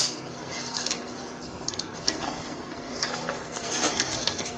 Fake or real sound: fake